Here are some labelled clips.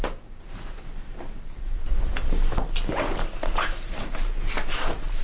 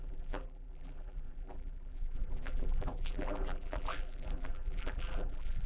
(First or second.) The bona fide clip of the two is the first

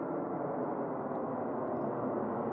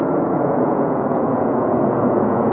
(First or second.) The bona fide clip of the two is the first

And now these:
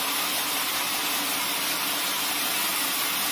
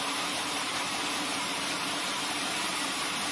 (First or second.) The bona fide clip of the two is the first